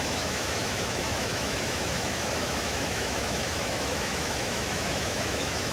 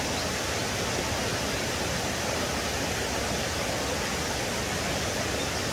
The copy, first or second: first